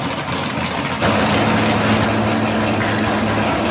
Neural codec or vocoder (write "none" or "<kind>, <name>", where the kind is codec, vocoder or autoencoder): none